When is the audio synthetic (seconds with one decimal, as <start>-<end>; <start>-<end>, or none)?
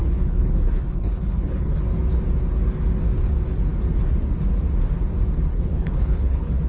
0.0-1.8; 5.5-6.7